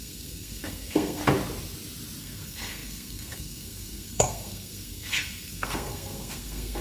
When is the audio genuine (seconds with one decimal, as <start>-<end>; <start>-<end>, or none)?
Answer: 1.2-2.2